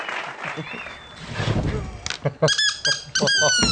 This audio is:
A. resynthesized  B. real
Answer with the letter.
B